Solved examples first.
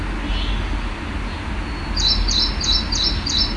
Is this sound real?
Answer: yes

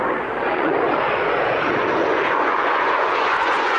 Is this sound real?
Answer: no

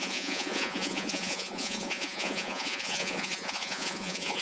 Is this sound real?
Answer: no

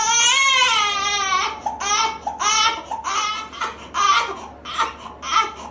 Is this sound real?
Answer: yes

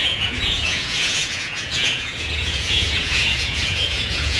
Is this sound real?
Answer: no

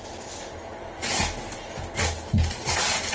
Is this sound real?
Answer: yes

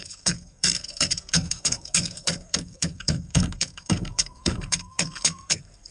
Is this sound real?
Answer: no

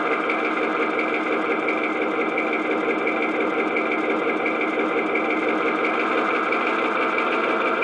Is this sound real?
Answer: yes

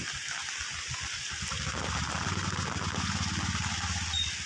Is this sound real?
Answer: yes